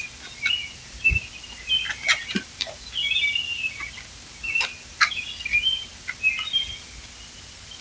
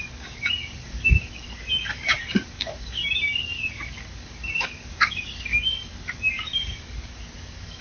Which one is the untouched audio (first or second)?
first